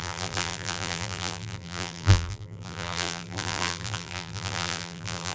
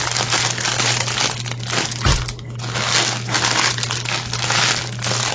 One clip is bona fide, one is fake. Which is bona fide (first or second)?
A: second